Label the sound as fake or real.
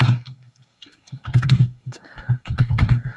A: fake